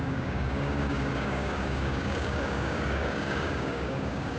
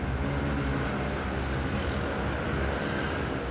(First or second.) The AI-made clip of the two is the first